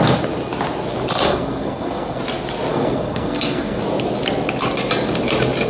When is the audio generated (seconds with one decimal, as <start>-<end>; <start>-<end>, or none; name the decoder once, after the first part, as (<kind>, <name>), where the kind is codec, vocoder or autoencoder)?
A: 1.3-2.2 (codec, SNAC); 2.7-3.8

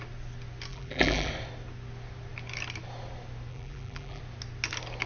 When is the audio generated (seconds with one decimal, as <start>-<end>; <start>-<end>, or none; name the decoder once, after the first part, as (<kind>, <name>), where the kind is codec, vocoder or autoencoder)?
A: 0.7-1.3 (vocoder, BigVGAN v2); 3.5-4.2

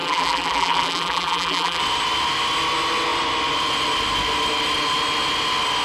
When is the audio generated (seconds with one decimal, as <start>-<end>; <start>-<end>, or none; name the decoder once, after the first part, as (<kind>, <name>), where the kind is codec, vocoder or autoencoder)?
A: 0.0-1.8 (vocoder, BigVGAN v2)

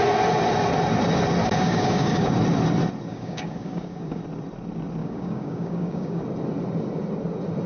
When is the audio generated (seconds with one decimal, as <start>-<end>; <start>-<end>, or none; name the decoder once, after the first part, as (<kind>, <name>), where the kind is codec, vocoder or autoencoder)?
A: 1.4-2.3 (codec, DAC); 3.1-4.2; 5.0-6.2

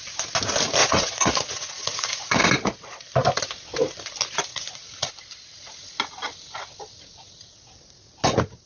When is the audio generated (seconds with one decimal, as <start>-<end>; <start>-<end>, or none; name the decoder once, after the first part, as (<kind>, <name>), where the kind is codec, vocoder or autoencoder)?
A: 0.8-2.4 (vocoder, Vocos); 4.5-5.1

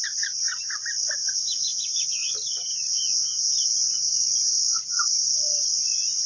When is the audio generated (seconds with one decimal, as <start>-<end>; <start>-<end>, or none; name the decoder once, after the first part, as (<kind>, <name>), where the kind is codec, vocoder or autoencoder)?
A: 2.9-3.4 (vocoder, Vocos)

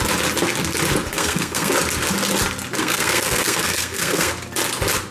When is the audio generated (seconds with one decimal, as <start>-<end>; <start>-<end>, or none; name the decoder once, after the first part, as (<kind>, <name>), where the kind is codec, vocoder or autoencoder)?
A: 1.1-1.7 (codec, SNAC); 2.8-4.3